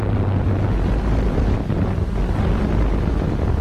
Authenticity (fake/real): real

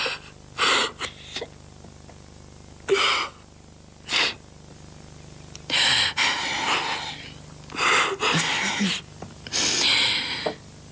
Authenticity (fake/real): real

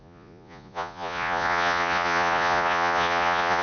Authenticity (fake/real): fake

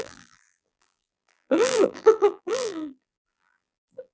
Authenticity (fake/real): fake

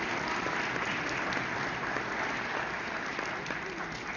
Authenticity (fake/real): real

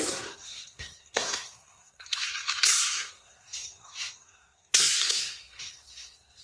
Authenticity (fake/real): fake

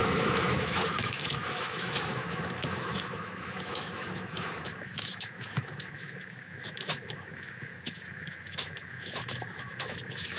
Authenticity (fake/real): fake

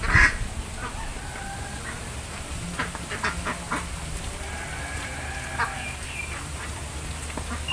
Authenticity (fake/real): real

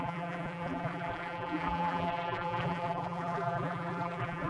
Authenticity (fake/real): fake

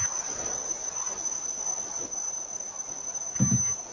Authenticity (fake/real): real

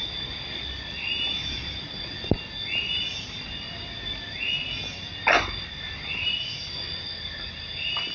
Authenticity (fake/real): real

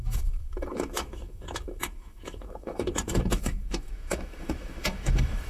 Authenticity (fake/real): fake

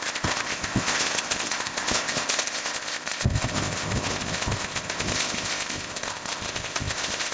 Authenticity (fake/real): fake